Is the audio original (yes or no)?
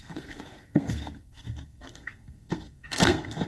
no